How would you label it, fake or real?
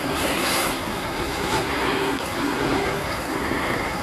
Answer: fake